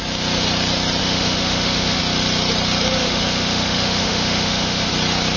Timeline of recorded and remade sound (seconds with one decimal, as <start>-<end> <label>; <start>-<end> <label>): 0.0-1.0 recorded; 1.0-2.0 remade; 2.0-3.0 recorded; 3.0-4.9 remade; 4.9-5.4 recorded